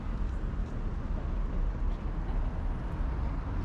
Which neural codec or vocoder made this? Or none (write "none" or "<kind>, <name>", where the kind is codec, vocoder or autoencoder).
none